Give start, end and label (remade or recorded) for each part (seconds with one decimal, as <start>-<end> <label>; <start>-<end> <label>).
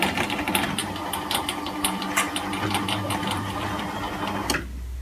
0.0-0.8 recorded; 0.8-3.8 remade; 3.8-5.0 recorded